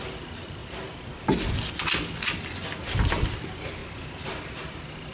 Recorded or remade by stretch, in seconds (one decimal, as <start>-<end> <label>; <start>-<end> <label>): 0.0-0.6 remade; 0.6-3.0 recorded; 3.0-5.1 remade